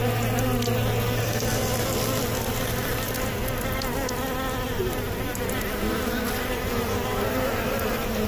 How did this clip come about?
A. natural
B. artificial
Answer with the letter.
A